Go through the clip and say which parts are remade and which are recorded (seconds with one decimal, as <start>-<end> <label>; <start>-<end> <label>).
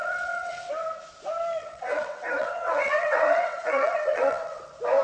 0.0-0.7 remade; 0.7-1.6 recorded; 1.6-4.6 remade; 4.6-5.0 recorded